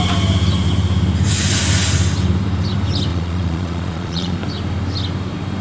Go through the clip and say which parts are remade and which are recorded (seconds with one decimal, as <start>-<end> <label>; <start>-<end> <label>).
0.0-3.1 recorded; 3.1-4.4 remade; 4.4-5.6 recorded